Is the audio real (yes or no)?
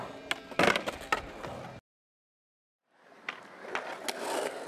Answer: yes